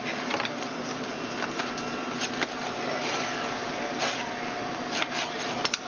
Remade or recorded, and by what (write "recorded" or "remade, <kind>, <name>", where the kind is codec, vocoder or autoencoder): recorded